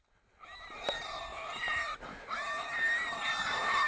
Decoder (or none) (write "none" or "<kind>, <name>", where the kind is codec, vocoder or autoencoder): none